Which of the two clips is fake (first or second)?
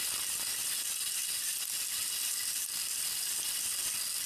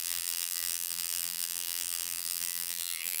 second